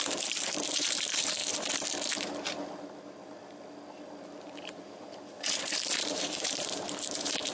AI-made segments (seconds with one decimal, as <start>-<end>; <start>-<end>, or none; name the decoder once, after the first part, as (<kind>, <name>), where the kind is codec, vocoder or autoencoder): 0.0-1.4 (vocoder, BigVGAN v2); 4.4-7.5